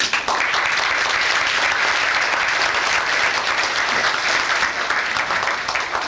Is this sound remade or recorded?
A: recorded